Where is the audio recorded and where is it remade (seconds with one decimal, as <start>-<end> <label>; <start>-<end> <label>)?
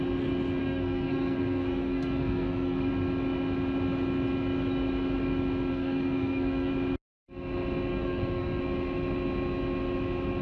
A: 0.0-0.6 recorded; 0.6-2.9 remade; 2.9-5.7 recorded; 5.7-6.7 remade; 6.7-7.9 recorded; 7.9-8.6 remade; 8.6-10.4 recorded